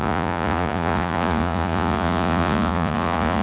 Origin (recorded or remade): remade